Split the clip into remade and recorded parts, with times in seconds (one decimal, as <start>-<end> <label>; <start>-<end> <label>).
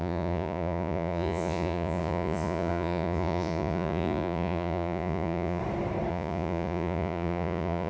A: 0.0-5.6 remade; 5.6-6.1 recorded; 6.1-7.9 remade